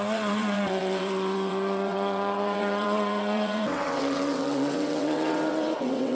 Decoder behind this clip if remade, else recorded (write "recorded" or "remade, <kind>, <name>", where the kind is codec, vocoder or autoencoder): remade, vocoder, WaveNeXt